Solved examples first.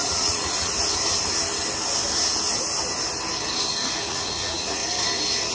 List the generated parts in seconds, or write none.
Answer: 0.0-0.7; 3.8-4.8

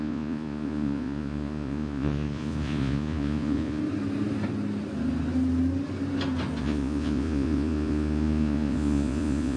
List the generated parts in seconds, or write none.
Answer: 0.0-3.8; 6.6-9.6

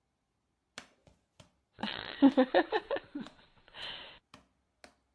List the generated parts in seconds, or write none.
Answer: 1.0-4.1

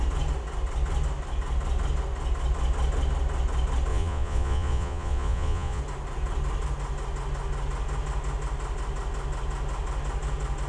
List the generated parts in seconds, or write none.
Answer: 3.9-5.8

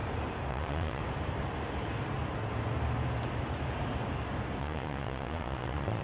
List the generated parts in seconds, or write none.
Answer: 0.5-1.0; 4.6-6.0

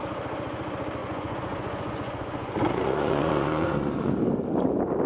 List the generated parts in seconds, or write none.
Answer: 1.0-4.1

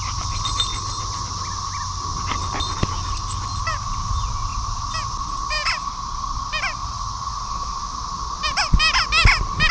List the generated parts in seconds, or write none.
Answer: 6.8-7.4

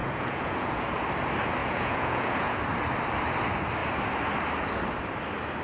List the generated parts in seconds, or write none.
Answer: 0.0-0.8; 1.6-2.6